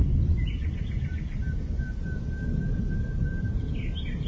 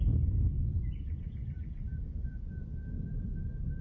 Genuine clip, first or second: first